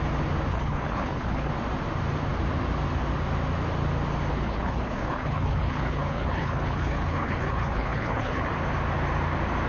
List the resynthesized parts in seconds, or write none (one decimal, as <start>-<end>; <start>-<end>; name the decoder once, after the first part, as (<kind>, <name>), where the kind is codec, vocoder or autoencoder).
0.5-1.5 (codec, HILCodec); 4.3-8.5